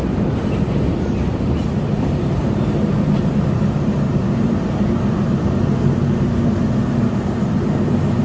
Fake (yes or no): no